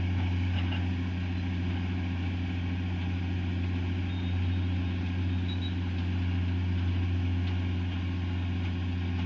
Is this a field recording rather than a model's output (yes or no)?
yes